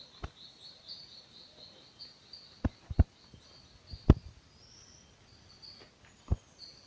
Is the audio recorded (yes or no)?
yes